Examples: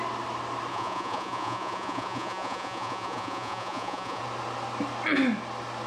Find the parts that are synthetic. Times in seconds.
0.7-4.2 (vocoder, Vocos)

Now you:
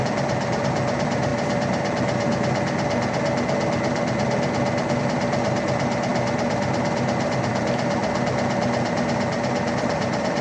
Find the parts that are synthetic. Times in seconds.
0.0-1.3 (vocoder, BigVGAN v2); 5.0-8.0; 9.7-10.4

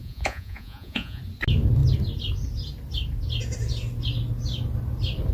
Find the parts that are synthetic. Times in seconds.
0.0-1.2 (vocoder, Vocos)

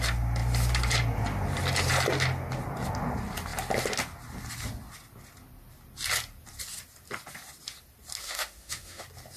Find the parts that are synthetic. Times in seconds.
8.2-9.0 (autoencoder, DAC-VAE)

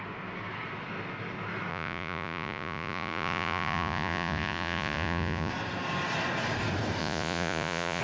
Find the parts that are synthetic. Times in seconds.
1.7-5.5 (vocoder, Vocos); 7.0-8.0

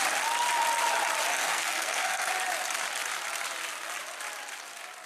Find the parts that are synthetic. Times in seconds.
1.3-2.3 (codec, SNAC)

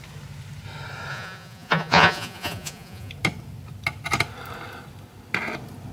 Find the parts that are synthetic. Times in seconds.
1.1-3.1 (vocoder, Vocos)

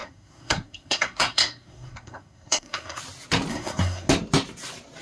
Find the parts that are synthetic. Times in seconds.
0.0-3.0 (codec, SNAC); 3.5-4.1